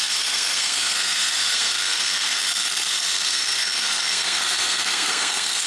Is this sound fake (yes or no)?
yes